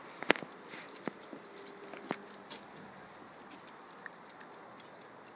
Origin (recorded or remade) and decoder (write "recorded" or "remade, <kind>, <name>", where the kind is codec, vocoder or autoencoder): recorded